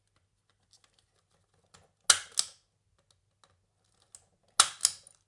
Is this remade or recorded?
recorded